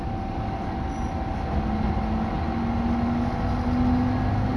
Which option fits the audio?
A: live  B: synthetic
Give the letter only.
A